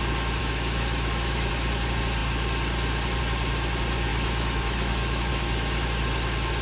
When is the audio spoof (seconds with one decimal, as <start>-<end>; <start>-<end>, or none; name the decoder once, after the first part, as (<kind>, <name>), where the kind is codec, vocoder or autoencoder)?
0.4-1.5 (autoencoder, DAC-VAE); 4.1-5.3